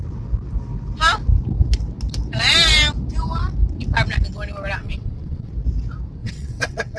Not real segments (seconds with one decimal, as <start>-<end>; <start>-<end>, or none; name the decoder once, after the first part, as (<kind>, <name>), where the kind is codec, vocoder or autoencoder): 4.8-5.5 (vocoder, WaveNeXt); 6.2-7.0